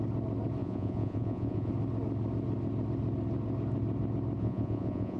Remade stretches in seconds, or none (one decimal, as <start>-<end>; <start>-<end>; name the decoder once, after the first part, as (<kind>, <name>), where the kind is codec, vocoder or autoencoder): 0.6-1.7 (vocoder, Vocos); 4.4-5.2